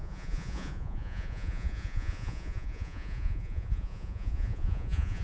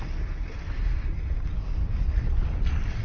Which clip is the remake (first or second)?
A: first